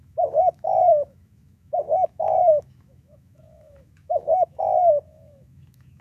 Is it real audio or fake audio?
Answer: fake